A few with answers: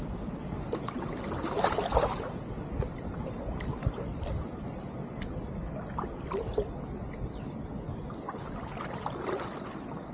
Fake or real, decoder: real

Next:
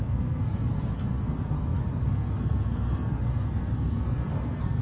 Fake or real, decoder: fake, codec, SNAC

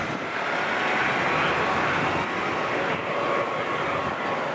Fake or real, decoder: real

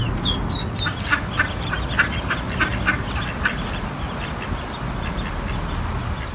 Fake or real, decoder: real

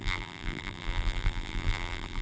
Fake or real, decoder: fake, vocoder, BigVGAN v2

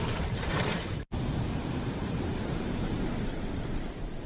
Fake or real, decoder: fake, vocoder, BigVGAN v2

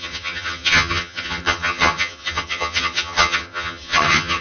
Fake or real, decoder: fake, vocoder, HiFi-GAN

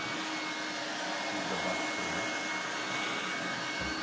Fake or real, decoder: real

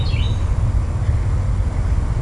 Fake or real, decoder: real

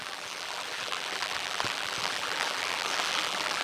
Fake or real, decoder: fake, vocoder, BigVGAN v2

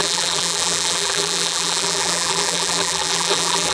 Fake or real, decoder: fake, vocoder, BigVGAN v2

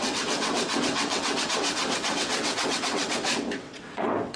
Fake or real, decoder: fake, vocoder, WaveNeXt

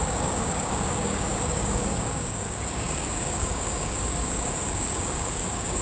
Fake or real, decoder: fake, codec, DAC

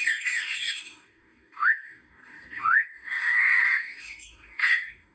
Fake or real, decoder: fake, codec, DAC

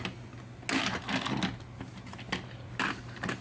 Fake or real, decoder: real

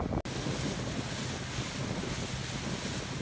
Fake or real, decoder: real